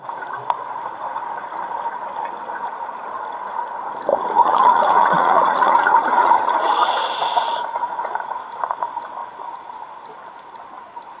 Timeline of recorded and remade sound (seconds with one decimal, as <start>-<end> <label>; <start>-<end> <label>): 0.0-4.1 recorded; 4.1-8.4 remade; 8.4-11.2 recorded